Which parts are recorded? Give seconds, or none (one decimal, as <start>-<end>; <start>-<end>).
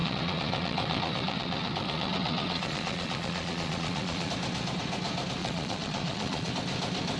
4.3-5.4; 6.5-7.2